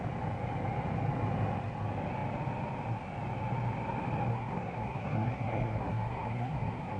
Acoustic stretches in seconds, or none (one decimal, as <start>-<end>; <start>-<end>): 0.0-4.3